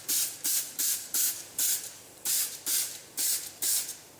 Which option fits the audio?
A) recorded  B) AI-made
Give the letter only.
B